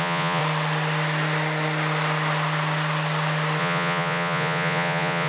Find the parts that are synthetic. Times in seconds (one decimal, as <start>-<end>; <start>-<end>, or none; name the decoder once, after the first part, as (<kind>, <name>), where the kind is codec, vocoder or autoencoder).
0.0-0.4 (vocoder, Vocos); 3.6-5.3